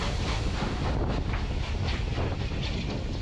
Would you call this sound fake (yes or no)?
no